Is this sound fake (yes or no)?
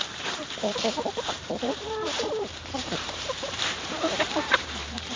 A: yes